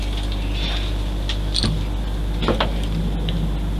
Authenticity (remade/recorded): recorded